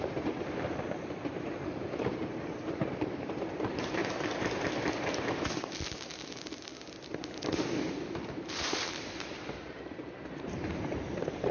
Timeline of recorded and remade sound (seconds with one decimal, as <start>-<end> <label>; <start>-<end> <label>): 0.0-4.0 remade; 4.0-7.8 recorded; 7.8-11.5 remade